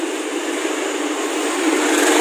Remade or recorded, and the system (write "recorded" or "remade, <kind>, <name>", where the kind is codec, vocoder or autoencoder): recorded